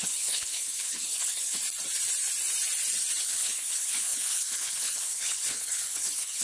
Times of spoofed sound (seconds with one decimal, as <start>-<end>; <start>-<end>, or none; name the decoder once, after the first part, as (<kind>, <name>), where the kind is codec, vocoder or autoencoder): 0.0-1.6 (codec, HILCodec); 3.2-6.4